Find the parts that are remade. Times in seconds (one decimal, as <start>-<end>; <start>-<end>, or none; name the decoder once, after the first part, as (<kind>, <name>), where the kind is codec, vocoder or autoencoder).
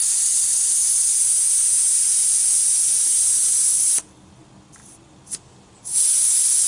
none